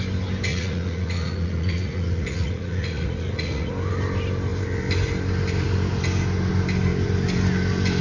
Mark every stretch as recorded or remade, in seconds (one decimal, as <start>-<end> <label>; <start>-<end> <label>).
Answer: 0.0-0.5 recorded; 0.5-3.7 remade; 3.7-8.0 recorded